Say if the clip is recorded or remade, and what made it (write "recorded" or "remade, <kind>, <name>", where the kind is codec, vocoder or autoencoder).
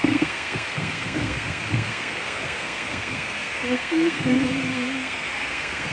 remade, codec, SNAC